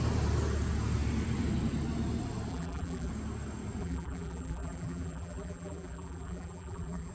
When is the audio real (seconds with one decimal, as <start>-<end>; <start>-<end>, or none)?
0.0-2.5; 3.1-3.8